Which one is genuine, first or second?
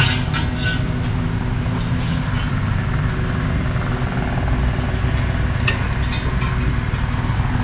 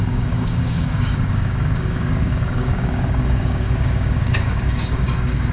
first